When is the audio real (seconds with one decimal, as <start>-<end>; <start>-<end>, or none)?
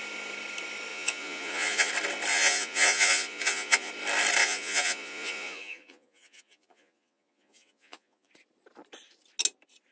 0.0-0.9; 1.9-2.3; 3.9-4.4; 8.3-9.9